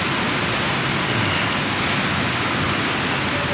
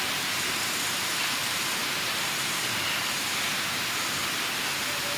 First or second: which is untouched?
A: first